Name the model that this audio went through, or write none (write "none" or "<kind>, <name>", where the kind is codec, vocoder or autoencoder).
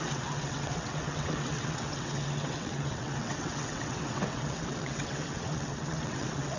vocoder, WaveNeXt